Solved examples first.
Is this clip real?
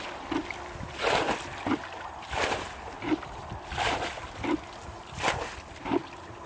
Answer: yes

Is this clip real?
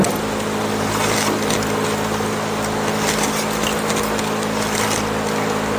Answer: yes